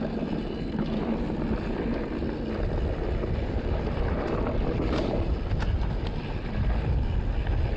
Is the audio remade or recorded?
recorded